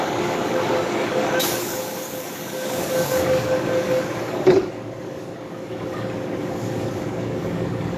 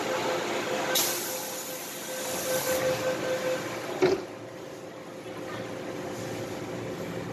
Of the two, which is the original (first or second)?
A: second